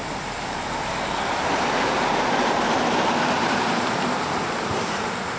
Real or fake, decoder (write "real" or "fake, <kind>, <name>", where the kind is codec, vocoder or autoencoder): fake, vocoder, BigVGAN v2